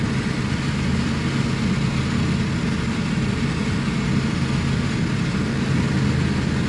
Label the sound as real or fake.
real